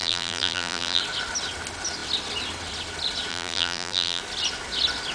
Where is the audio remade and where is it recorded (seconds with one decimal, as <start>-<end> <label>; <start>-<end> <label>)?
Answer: 0.0-1.0 remade; 1.0-3.3 recorded; 3.3-4.2 remade; 4.2-5.1 recorded